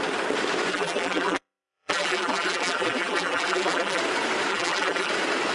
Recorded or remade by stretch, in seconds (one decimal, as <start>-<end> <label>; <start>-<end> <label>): 0.0-0.7 recorded; 0.7-4.0 remade; 4.0-4.5 recorded; 4.5-5.1 remade; 5.1-5.5 recorded